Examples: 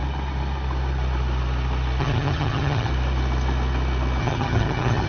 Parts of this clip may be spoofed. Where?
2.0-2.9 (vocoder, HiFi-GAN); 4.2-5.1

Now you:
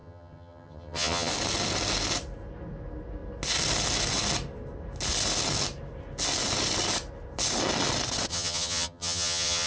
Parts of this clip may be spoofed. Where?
0.0-1.3 (vocoder, HiFi-GAN); 8.3-9.7

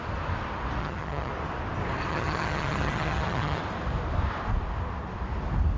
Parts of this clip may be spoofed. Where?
0.8-1.3 (vocoder, HiFi-GAN); 2.1-3.6

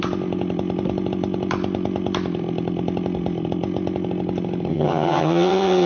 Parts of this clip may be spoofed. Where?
4.7-5.9 (vocoder, HiFi-GAN)

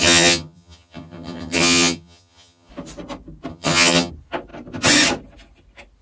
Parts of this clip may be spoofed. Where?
0.0-2.7 (vocoder, HiFi-GAN); 3.5-4.1